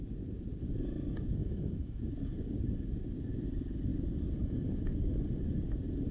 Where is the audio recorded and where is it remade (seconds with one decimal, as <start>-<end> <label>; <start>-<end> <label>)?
0.0-1.4 recorded; 1.4-2.0 remade; 2.0-6.1 recorded